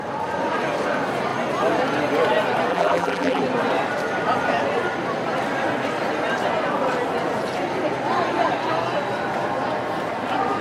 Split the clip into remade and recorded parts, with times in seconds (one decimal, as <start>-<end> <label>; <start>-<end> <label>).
0.0-2.7 recorded; 2.7-3.4 remade; 3.4-10.6 recorded